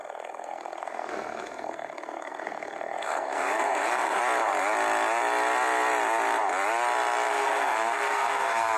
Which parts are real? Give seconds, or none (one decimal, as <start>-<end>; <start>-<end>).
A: 4.2-7.3